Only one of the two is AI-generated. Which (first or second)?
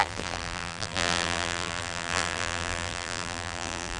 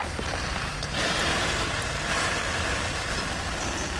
first